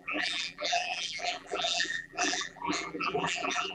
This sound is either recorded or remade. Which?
remade